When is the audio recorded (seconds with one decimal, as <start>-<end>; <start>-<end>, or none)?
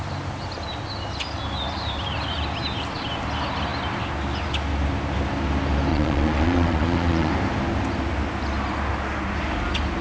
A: 0.0-5.9; 7.3-10.0